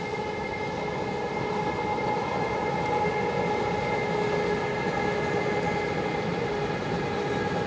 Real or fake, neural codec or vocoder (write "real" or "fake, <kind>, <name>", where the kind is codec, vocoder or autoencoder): real